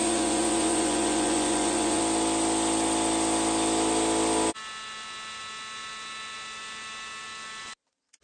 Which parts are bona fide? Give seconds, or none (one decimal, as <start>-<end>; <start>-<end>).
2.0-8.2